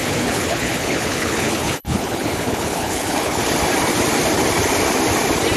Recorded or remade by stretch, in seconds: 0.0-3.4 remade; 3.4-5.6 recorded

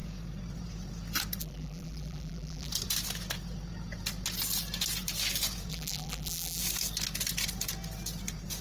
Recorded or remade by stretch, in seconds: 0.0-1.4 recorded; 1.4-2.7 remade; 2.7-5.7 recorded; 5.7-6.6 remade; 6.6-8.6 recorded

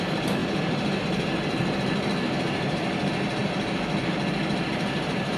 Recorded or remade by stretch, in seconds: 0.0-3.4 remade; 3.4-4.5 recorded; 4.5-5.4 remade

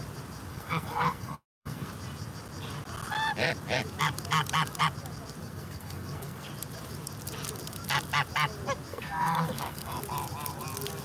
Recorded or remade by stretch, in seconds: 0.0-0.5 recorded; 0.5-1.9 remade; 1.9-5.4 recorded; 5.4-6.5 remade; 6.5-8.9 recorded; 8.9-10.0 remade; 10.0-11.0 recorded

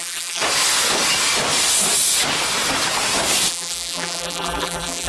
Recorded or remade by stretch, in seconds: 0.0-0.4 remade; 0.4-3.5 recorded; 3.5-5.1 remade

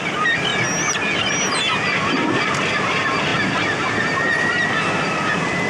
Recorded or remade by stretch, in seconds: 0.0-0.5 remade; 0.5-2.0 recorded; 2.0-3.3 remade; 3.3-4.5 recorded; 4.5-5.7 remade

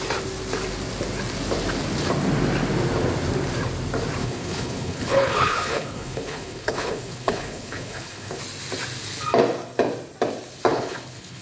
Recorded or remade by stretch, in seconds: 0.0-4.2 recorded; 4.2-8.4 remade; 8.4-10.7 recorded; 10.7-11.4 remade